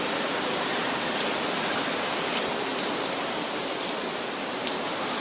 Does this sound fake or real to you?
real